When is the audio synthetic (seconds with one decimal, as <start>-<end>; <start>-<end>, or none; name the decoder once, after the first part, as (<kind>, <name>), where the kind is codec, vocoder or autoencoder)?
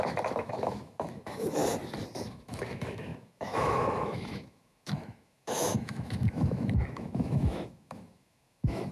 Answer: 0.0-1.6 (autoencoder, DAC-VAE); 2.1-8.9